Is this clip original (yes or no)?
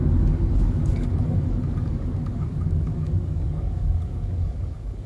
no